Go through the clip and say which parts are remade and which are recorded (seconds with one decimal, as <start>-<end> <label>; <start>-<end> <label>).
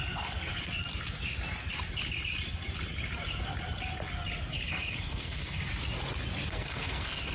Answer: 0.0-0.5 remade; 0.5-4.7 recorded; 4.7-5.6 remade; 5.6-6.5 recorded; 6.5-7.3 remade